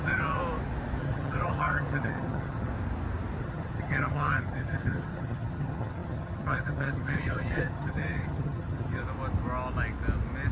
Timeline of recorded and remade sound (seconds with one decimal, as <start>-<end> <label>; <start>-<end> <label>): 0.0-0.4 remade; 0.4-1.0 recorded; 1.0-2.7 remade; 2.7-3.4 recorded; 3.4-9.0 remade; 9.0-10.5 recorded